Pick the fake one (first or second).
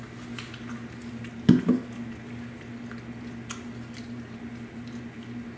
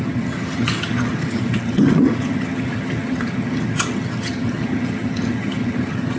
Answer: second